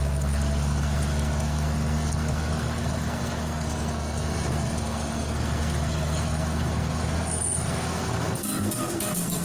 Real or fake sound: fake